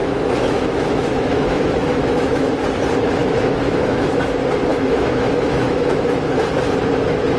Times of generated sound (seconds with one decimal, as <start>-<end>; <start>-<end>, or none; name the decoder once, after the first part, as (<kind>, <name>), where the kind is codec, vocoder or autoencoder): 0.0-2.5 (autoencoder, DAC-VAE); 3.2-4.1; 4.7-6.4